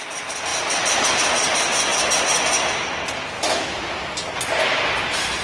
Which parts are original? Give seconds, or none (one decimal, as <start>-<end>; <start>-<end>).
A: 0.0-5.4